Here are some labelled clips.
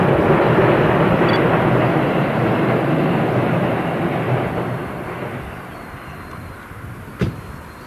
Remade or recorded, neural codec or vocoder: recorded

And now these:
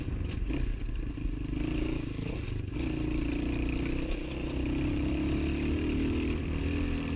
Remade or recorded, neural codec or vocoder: recorded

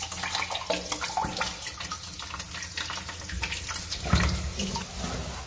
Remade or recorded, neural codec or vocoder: recorded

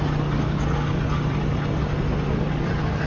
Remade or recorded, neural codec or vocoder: recorded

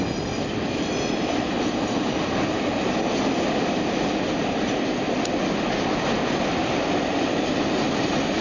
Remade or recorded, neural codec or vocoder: recorded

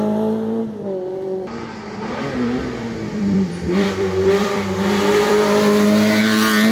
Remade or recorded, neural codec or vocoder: remade, vocoder, BigVGAN v2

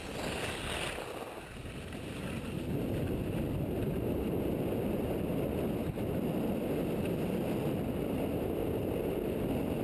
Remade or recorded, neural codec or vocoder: recorded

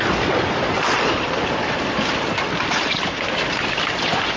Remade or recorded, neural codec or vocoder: remade, vocoder, BigVGAN v2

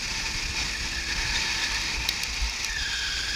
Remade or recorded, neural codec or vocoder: recorded